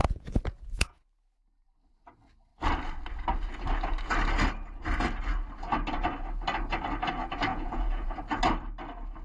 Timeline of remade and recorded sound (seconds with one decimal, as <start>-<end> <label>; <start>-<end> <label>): 0.0-1.0 remade; 1.0-7.5 recorded; 7.5-8.2 remade; 8.2-9.2 recorded

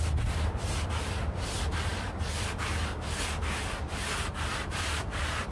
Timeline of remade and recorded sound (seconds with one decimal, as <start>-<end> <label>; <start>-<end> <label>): 0.0-5.5 recorded

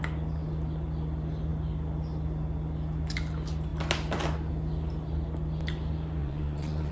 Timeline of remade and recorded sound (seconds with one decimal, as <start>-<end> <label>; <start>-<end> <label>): 0.0-6.2 recorded; 6.2-6.9 remade

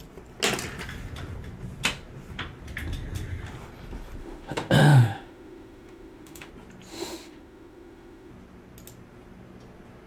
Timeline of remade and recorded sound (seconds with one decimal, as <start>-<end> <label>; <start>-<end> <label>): 0.0-4.2 recorded; 4.2-6.5 remade; 6.5-6.9 recorded; 6.9-8.3 remade; 8.3-10.1 recorded

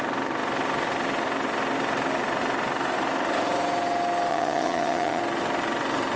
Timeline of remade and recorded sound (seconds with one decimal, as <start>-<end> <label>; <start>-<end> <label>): 0.0-4.3 recorded; 4.3-5.2 remade; 5.2-6.2 recorded

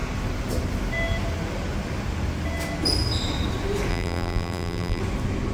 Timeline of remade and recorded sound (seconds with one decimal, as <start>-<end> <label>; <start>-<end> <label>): 0.0-3.9 recorded; 3.9-5.0 remade; 5.0-5.5 recorded

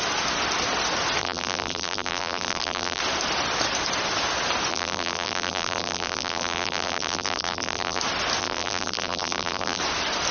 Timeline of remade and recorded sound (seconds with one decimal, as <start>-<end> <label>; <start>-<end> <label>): 0.0-1.2 recorded; 1.2-3.0 remade; 3.0-4.7 recorded; 4.7-8.0 remade; 8.0-8.4 recorded; 8.4-9.8 remade; 9.8-10.3 recorded

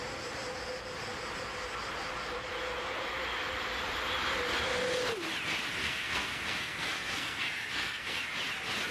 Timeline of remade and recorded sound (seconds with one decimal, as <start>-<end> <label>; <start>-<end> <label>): 0.0-5.8 recorded; 5.8-8.2 remade; 8.2-8.9 recorded